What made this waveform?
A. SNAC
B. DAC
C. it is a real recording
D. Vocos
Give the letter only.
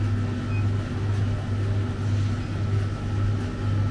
C